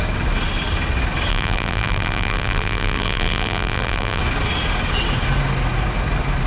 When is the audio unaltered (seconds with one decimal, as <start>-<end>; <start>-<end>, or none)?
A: 0.0-1.3; 4.2-6.5